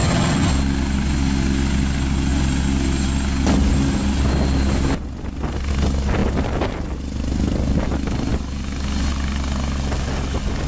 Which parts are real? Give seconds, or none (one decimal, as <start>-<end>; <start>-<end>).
0.5-10.7